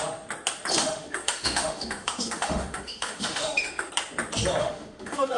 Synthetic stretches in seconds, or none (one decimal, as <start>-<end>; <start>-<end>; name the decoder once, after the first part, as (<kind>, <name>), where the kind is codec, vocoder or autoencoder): 0.7-3.9 (autoencoder, DAC-VAE); 4.6-5.4